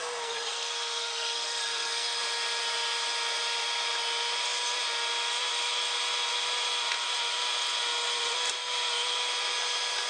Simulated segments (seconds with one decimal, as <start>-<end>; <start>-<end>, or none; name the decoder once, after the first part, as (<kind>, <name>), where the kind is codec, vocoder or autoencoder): 0.0-2.2 (codec, SNAC)

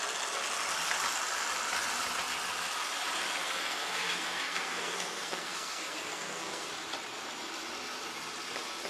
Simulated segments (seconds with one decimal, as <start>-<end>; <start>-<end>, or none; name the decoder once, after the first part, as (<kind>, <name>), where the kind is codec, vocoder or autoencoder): 3.4-6.7 (codec, SNAC)

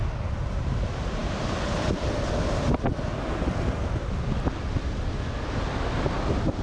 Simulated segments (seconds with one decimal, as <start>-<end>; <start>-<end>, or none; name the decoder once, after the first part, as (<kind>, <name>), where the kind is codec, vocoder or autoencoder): none

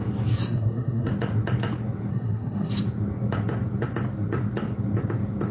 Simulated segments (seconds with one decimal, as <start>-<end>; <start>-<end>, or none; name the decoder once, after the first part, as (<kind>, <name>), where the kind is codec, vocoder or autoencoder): 0.4-1.1 (codec, SNAC); 2.1-2.7

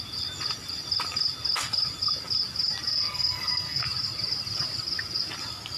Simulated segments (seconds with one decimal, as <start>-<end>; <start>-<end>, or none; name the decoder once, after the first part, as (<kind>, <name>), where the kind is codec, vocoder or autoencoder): 2.9-3.8 (codec, SNAC)